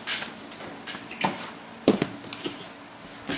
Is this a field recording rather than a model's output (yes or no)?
yes